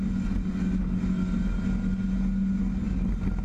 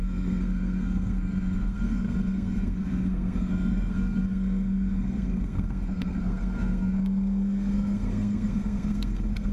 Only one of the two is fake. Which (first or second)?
second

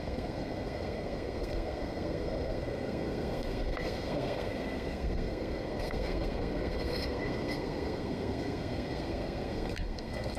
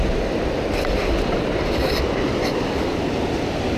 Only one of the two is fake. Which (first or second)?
first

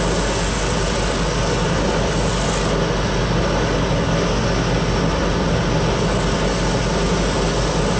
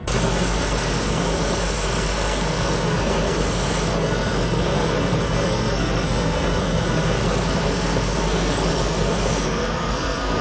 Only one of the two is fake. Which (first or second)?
second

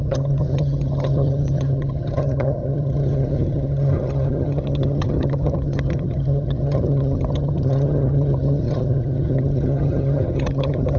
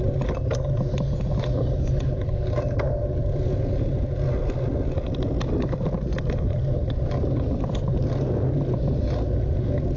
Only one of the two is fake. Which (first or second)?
first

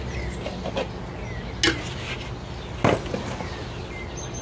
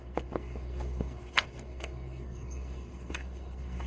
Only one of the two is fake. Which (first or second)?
second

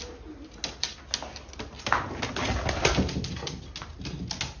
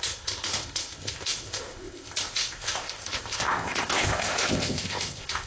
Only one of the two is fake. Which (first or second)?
second